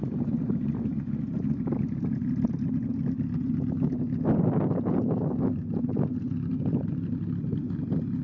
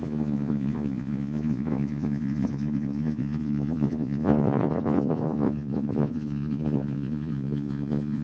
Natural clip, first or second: first